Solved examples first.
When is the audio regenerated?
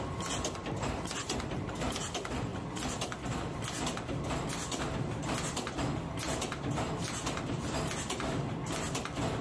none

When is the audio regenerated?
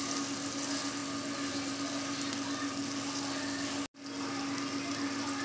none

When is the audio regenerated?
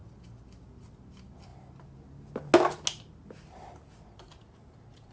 none